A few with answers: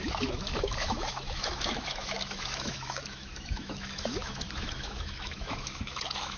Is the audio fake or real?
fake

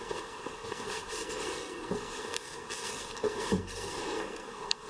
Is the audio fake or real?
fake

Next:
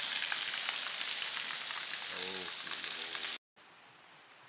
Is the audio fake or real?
real